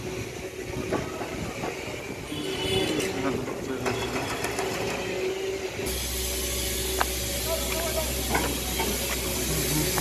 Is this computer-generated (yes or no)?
no